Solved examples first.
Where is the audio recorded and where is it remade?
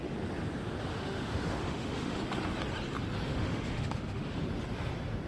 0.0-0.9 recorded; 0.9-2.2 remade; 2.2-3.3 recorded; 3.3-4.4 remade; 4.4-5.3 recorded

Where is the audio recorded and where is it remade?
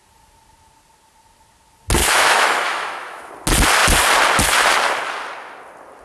0.0-2.0 recorded; 2.0-3.3 remade; 3.3-6.0 recorded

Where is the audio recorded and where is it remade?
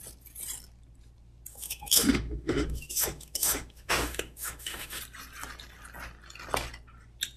0.0-1.5 recorded; 1.5-5.0 remade; 5.0-7.4 recorded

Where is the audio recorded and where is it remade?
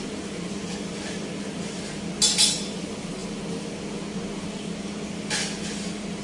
0.0-6.2 recorded